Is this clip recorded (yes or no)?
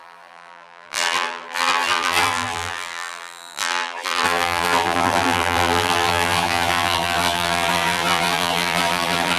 no